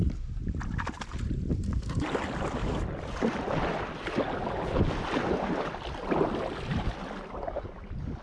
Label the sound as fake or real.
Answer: real